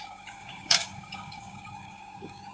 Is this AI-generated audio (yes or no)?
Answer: yes